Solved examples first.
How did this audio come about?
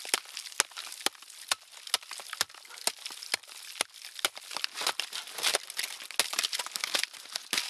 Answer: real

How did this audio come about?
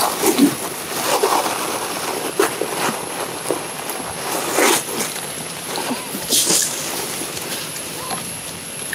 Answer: real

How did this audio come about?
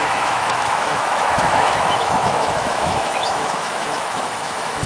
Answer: fake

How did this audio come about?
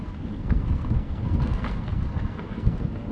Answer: fake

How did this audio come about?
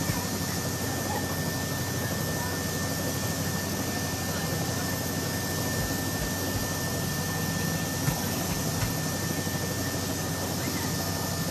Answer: real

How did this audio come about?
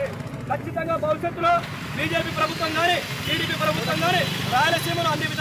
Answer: real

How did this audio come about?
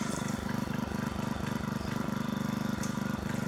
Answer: real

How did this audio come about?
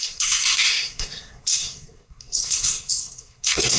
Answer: fake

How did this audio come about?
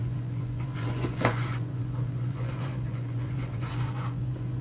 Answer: fake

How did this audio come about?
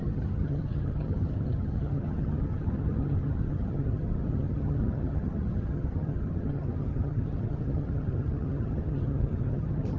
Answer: fake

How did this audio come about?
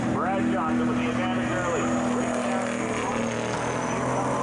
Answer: real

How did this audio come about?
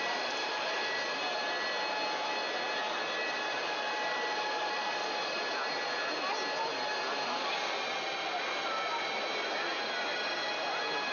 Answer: real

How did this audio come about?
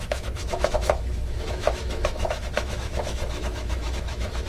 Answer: fake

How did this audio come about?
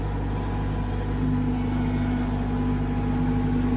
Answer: real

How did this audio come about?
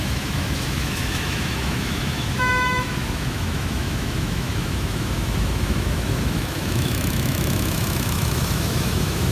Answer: fake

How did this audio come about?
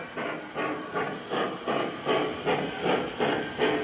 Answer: real